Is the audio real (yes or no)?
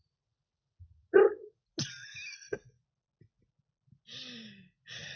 yes